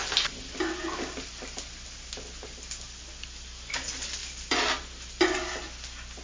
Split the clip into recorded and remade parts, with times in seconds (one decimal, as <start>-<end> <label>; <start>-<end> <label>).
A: 0.0-6.2 recorded

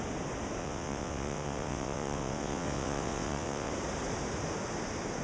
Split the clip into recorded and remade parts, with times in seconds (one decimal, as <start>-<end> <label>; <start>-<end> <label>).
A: 0.0-0.6 recorded; 0.6-3.7 remade; 3.7-5.2 recorded

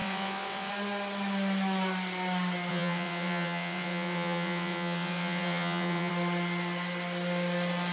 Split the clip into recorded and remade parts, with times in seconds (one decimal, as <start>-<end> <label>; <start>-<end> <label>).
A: 0.0-0.7 remade; 0.7-2.7 recorded; 2.7-6.1 remade; 6.1-7.9 recorded

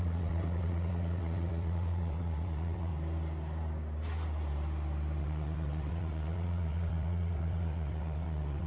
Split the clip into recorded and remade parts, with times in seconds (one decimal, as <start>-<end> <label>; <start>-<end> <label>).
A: 0.0-2.9 remade; 2.9-5.2 recorded; 5.2-8.7 remade

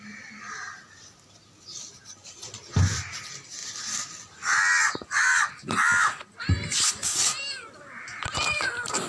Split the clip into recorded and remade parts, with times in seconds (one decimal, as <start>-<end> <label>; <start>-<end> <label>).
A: 0.0-9.1 recorded

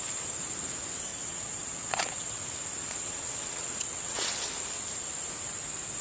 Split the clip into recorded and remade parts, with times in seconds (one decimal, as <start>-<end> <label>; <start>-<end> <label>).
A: 0.0-1.1 recorded; 1.1-2.4 remade; 2.4-2.8 recorded; 2.8-4.5 remade; 4.5-6.0 recorded

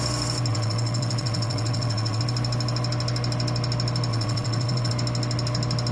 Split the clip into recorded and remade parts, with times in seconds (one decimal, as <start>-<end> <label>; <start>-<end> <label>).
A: 0.0-0.5 recorded; 0.5-2.2 remade; 2.2-4.1 recorded; 4.1-4.9 remade; 4.9-5.9 recorded